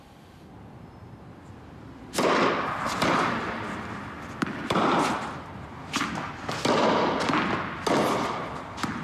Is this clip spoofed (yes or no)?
no